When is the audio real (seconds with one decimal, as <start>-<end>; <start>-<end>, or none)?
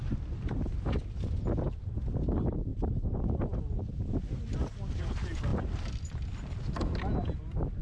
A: 0.0-2.7; 5.1-5.5; 6.5-7.8